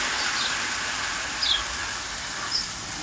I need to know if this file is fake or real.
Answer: real